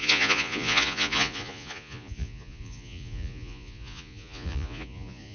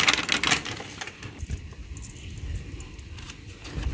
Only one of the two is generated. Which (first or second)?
first